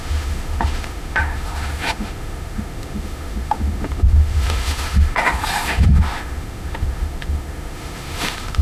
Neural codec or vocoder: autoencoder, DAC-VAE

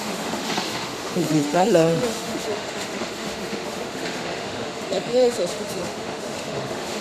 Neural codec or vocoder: autoencoder, DAC-VAE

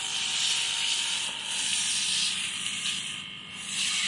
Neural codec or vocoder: none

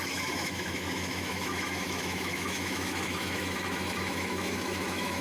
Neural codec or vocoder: autoencoder, DAC-VAE